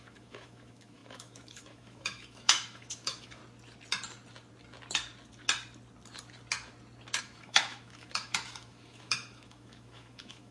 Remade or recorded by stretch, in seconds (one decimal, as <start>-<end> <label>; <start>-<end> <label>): 0.0-3.4 remade; 3.4-7.2 recorded; 7.2-10.5 remade